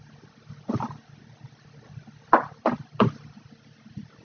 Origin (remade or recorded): recorded